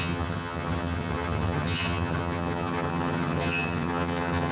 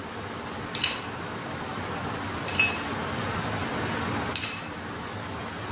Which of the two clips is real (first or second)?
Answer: second